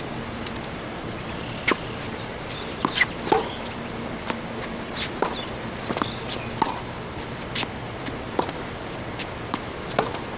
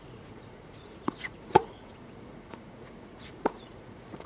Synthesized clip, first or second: second